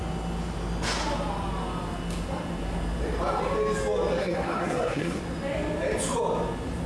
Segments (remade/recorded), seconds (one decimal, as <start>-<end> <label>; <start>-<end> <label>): 0.0-4.2 recorded; 4.2-5.2 remade; 5.2-6.9 recorded